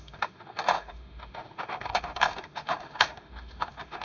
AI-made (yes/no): yes